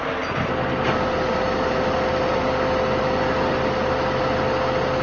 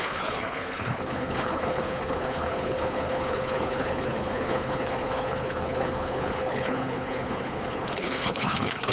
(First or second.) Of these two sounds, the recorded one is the first